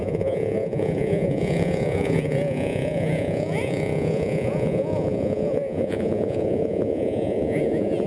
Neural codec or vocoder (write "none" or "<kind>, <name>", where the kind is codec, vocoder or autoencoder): vocoder, Vocos